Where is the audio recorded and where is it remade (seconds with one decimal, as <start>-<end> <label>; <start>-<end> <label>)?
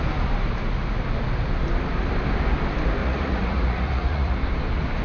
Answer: 0.0-3.0 recorded; 3.0-4.4 remade; 4.4-5.0 recorded